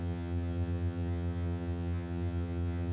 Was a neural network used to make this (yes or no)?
yes